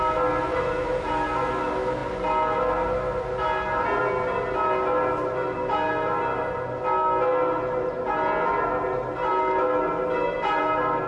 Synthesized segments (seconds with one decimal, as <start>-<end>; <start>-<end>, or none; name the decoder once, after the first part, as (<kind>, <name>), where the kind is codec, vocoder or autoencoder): none